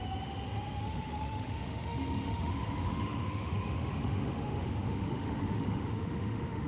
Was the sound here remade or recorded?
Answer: remade